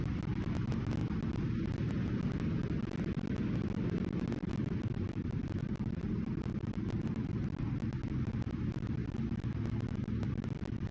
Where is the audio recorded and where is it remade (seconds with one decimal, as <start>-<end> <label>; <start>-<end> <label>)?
0.0-10.9 recorded